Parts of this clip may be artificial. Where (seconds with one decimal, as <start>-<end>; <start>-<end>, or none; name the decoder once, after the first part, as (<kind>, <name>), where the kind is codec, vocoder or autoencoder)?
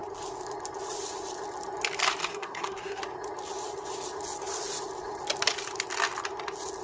2.3-3.0 (codec, SNAC)